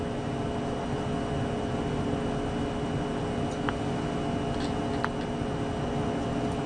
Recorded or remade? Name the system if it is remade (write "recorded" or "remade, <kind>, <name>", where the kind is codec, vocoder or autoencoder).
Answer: recorded